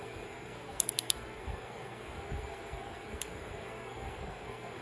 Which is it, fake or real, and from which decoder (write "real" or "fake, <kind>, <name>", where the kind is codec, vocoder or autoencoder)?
fake, codec, SNAC